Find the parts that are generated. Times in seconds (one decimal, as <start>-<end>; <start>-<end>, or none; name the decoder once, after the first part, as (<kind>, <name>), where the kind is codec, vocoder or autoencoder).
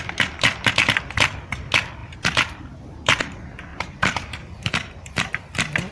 2.0-3.2 (vocoder, BigVGAN v2); 3.7-5.5